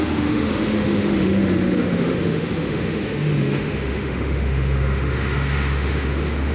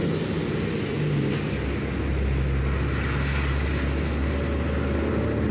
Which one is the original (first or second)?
second